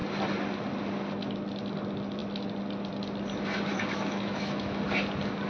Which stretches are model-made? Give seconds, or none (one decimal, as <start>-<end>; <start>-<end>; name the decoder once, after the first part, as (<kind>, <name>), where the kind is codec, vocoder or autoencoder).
3.7-4.8 (autoencoder, DAC-VAE)